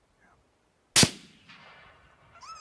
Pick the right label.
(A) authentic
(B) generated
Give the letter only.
A